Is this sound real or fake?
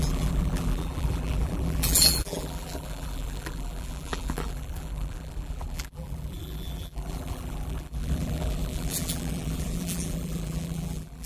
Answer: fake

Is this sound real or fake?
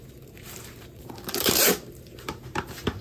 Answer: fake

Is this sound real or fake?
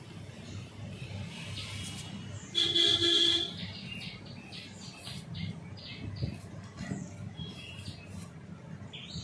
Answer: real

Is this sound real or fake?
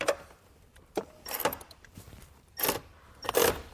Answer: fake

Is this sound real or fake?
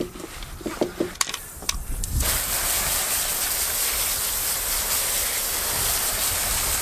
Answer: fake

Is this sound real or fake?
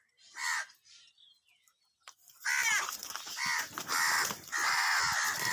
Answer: fake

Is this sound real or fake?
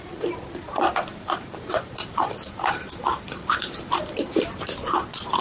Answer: fake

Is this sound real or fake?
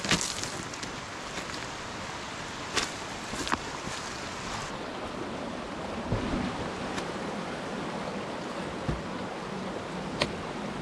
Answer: real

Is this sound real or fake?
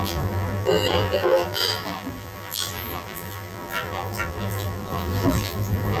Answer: fake